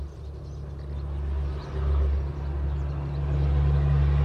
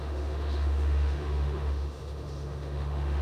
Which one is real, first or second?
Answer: first